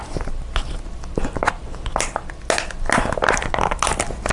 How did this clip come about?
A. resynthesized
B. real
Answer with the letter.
B